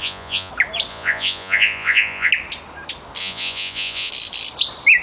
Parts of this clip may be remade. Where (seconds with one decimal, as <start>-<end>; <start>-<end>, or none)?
0.0-0.5; 0.9-2.3; 3.2-4.1